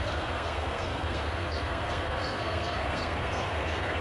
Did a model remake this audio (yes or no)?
yes